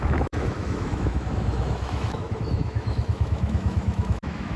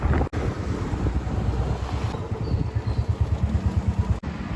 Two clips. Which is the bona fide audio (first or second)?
second